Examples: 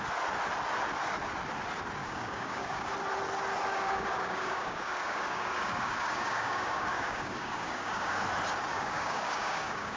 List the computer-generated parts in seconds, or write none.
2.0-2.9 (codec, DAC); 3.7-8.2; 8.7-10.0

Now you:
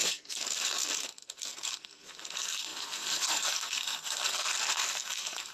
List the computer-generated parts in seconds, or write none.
0.0-5.5 (codec, SNAC)